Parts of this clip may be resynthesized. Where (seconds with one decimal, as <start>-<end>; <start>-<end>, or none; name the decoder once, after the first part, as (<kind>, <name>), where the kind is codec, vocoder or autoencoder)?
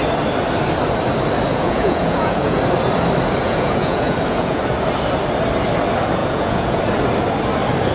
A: 1.5-2.6 (vocoder, Vocos); 3.4-4.6; 6.2-6.8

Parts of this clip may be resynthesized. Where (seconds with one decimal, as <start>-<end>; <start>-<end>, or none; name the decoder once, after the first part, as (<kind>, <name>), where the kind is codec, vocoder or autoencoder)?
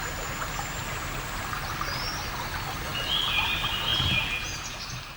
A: 3.9-4.8 (vocoder, Vocos)